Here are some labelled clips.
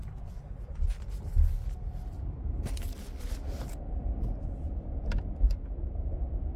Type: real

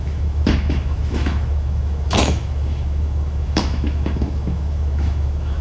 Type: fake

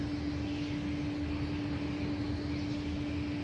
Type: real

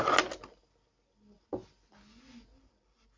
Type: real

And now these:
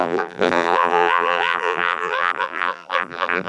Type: fake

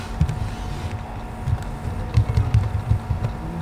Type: real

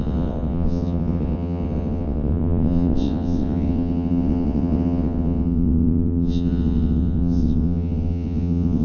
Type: fake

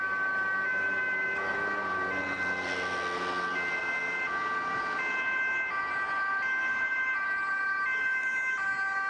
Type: real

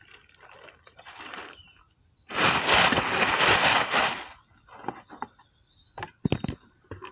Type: real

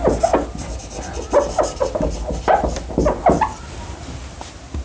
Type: real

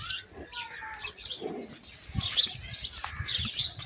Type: real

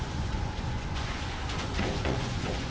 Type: fake